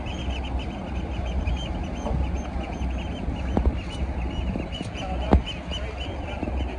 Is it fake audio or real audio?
real